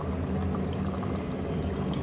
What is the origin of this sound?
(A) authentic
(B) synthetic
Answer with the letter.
A